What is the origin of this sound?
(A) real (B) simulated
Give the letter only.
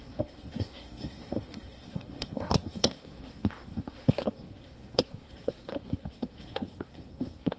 B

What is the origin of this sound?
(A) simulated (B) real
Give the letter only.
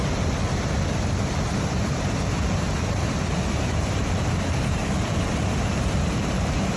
A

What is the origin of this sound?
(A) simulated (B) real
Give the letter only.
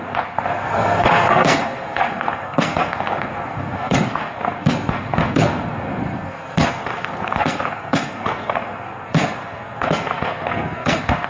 A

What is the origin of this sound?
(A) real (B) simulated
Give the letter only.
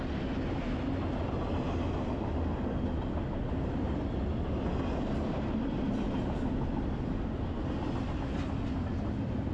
A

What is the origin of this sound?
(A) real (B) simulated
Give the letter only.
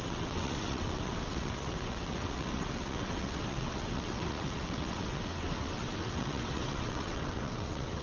B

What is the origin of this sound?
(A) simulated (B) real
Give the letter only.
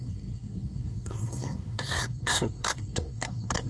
A